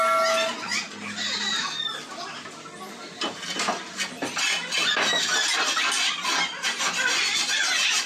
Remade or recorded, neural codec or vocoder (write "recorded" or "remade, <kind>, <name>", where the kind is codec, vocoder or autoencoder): recorded